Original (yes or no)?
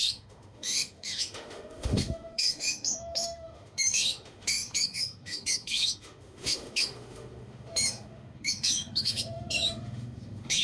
no